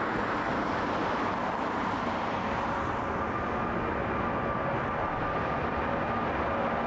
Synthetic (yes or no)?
no